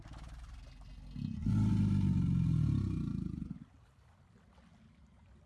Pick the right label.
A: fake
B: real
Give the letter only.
B